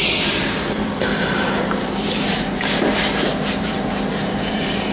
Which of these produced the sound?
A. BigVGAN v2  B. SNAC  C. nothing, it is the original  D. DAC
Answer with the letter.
A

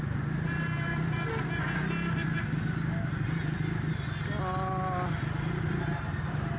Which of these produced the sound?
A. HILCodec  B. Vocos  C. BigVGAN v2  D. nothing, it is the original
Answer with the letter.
D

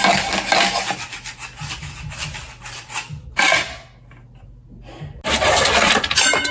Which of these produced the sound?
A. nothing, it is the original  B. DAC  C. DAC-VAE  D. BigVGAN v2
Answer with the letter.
A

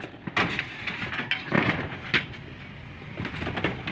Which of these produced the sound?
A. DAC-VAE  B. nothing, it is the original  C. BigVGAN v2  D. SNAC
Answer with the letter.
B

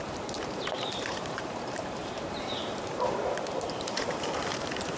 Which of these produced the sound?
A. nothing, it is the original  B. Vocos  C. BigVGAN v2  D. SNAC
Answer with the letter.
C